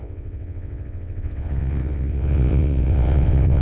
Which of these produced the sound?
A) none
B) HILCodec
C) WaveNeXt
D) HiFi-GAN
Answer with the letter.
C